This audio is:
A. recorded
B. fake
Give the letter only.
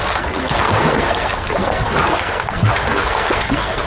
B